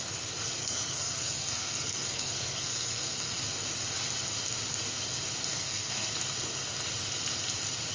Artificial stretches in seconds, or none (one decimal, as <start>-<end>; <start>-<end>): 0.6-3.4; 5.5-6.1